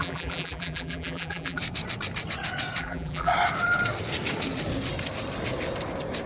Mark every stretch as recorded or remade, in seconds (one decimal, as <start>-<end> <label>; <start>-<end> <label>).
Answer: 0.0-1.6 remade; 1.6-2.8 recorded; 2.8-3.3 remade; 3.3-6.3 recorded